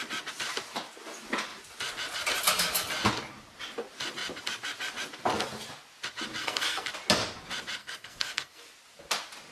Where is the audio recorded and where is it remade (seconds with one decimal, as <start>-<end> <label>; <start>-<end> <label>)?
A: 0.0-6.4 recorded; 6.4-6.9 remade; 6.9-7.8 recorded; 7.8-8.7 remade; 8.7-9.5 recorded